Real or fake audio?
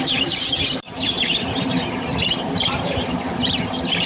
fake